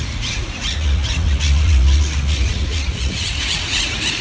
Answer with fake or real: fake